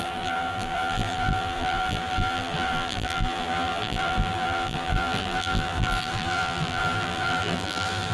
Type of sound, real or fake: fake